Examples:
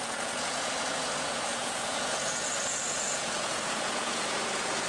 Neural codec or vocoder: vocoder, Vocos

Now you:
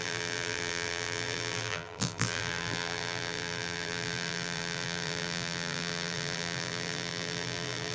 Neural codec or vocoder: vocoder, BigVGAN v2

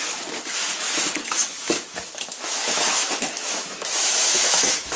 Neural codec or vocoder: autoencoder, DAC-VAE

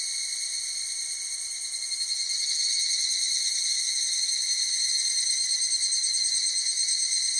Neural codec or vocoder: none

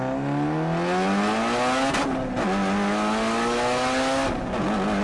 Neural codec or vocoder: none